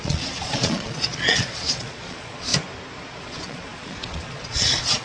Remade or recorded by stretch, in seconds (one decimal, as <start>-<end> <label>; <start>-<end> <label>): 0.0-2.5 remade; 2.5-3.2 recorded; 3.2-5.0 remade